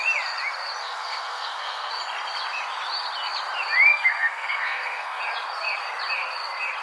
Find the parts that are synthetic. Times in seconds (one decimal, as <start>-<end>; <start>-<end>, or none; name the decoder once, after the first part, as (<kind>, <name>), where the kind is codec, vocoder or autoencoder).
0.8-1.9 (codec, SNAC); 3.9-5.2